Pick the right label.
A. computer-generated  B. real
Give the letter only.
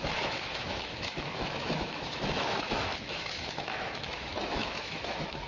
A